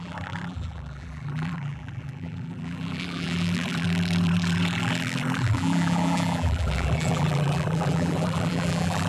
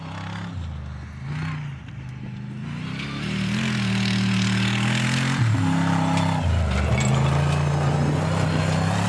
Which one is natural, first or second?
second